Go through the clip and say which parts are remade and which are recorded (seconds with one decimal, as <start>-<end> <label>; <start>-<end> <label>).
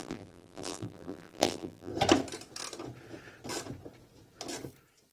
0.0-1.9 remade; 1.9-5.1 recorded